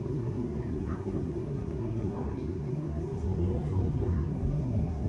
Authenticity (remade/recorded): remade